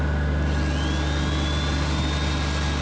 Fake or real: real